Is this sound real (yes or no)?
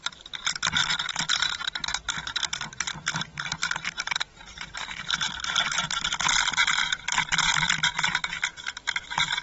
yes